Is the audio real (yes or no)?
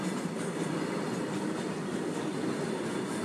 yes